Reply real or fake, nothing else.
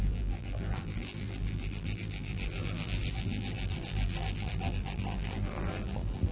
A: fake